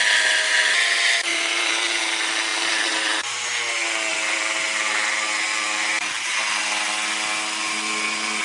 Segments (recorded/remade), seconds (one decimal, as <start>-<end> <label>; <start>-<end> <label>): 0.0-1.3 recorded; 1.3-2.0 remade; 2.0-2.5 recorded; 2.5-3.2 remade; 3.2-4.1 recorded; 4.1-5.9 remade; 5.9-8.4 recorded